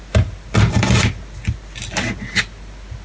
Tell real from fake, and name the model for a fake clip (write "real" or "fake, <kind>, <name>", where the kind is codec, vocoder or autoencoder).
real